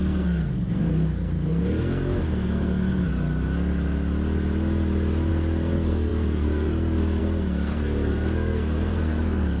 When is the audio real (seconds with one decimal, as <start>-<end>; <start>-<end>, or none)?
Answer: 3.1-5.3